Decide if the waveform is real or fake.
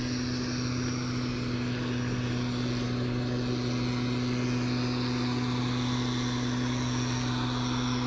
real